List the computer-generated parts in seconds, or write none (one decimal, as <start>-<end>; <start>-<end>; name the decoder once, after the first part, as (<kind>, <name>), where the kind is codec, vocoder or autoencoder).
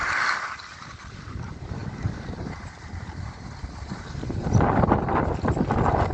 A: none